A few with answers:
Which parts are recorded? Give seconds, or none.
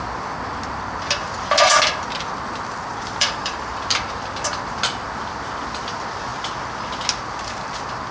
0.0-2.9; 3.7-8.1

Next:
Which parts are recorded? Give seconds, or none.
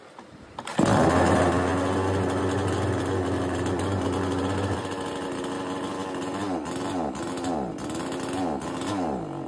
0.0-9.5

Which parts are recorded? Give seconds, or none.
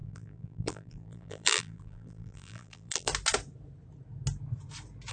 3.1-5.1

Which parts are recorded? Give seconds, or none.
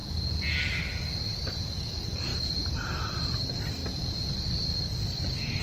0.0-1.4; 2.3-2.9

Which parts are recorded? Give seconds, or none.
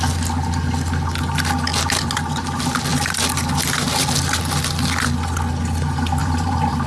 0.0-6.2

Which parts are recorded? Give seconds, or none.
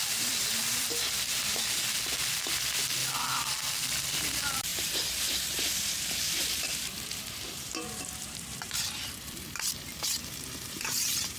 1.5-2.2; 3.0-4.1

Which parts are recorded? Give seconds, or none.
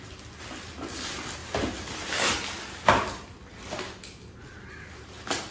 0.0-5.5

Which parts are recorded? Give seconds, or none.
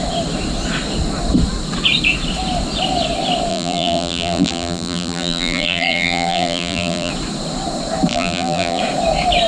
0.0-3.5; 7.1-8.1; 8.8-9.5